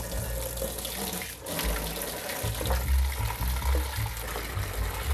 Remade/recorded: recorded